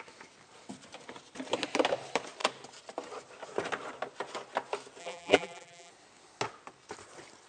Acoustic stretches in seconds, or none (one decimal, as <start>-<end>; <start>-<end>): 0.0-5.0; 5.9-7.5